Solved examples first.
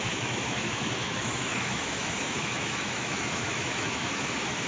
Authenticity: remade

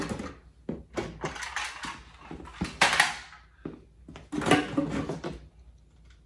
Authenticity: recorded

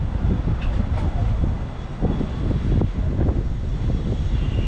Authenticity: recorded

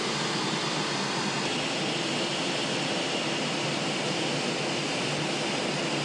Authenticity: recorded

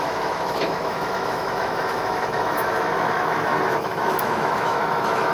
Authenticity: remade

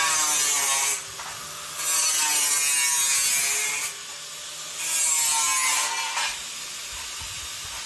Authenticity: recorded